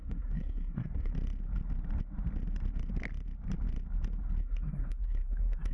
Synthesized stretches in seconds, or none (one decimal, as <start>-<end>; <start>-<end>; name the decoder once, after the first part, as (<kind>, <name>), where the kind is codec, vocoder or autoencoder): 0.0-1.1 (codec, SNAC); 4.4-5.7